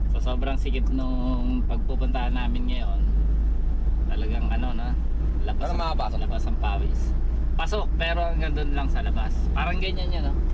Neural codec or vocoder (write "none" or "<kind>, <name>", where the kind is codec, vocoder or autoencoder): none